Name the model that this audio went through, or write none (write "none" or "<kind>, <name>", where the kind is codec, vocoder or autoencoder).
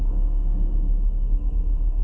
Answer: codec, SNAC